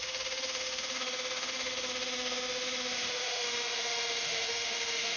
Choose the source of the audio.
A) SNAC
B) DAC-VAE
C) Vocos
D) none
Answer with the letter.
B